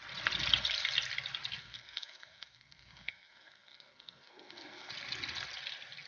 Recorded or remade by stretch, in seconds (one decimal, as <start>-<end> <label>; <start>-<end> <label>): 0.0-1.6 recorded; 1.6-4.9 remade; 4.9-6.1 recorded